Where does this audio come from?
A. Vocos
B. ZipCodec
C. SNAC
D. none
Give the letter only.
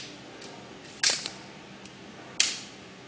D